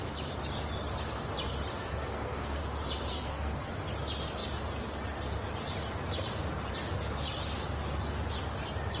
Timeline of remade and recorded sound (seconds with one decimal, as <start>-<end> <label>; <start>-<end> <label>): 0.0-1.9 recorded; 1.9-2.6 remade; 2.6-3.1 recorded; 3.1-3.7 remade; 3.7-9.0 recorded